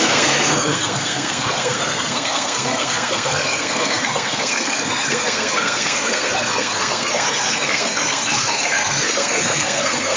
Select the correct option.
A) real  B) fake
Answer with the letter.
B